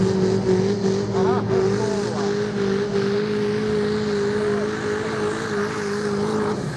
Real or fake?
real